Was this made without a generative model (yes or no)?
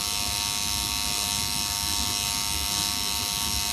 yes